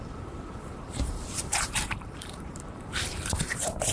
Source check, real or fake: fake